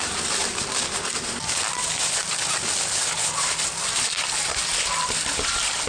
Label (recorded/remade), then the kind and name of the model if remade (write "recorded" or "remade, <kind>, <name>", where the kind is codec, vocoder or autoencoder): recorded